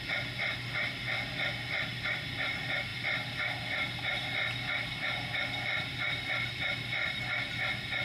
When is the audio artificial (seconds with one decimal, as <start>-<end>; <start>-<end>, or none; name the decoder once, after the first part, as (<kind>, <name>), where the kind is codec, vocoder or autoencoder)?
7.0-7.5 (vocoder, BigVGAN v2)